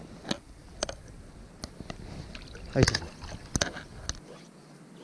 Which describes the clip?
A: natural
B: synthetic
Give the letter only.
A